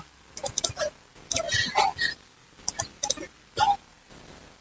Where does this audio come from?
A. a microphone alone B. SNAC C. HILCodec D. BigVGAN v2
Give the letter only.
A